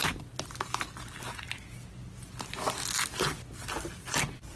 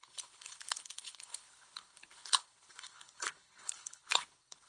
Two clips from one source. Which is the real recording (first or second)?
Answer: first